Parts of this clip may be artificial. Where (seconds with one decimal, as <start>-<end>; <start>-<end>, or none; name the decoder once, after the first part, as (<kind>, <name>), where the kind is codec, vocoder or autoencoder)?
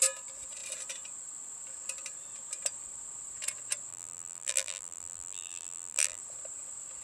3.9-6.2 (vocoder, BigVGAN v2)